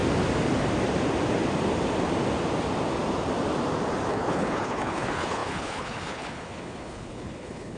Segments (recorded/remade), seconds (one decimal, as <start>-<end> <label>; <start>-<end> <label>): 0.0-4.1 recorded; 4.1-7.8 remade